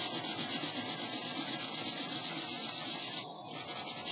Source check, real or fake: real